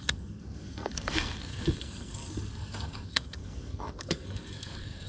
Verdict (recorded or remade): remade